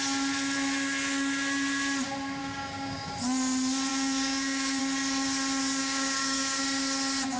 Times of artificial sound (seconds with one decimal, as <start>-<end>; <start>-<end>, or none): 2.4-3.1; 3.9-4.8; 5.8-6.6